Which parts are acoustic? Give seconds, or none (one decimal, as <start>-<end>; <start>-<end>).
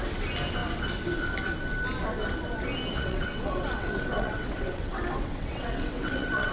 0.0-2.9